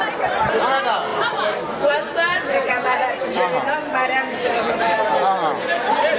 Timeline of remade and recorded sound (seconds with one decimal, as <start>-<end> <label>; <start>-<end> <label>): 0.0-6.2 recorded